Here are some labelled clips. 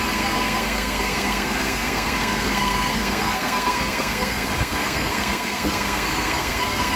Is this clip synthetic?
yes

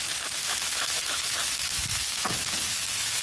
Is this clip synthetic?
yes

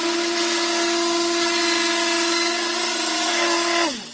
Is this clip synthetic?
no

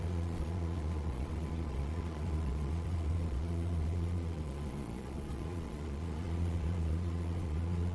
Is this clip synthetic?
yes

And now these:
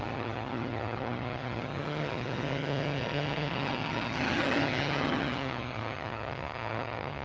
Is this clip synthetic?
yes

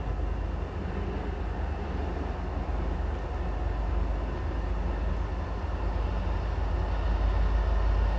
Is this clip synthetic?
no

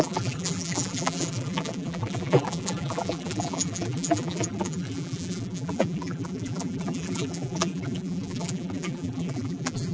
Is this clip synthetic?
yes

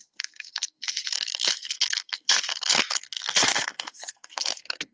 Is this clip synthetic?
yes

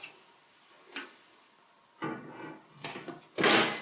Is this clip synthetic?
no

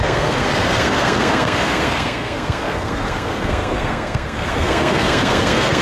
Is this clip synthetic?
yes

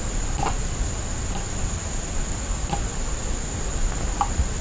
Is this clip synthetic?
no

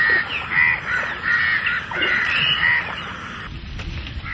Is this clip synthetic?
no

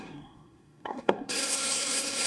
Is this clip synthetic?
yes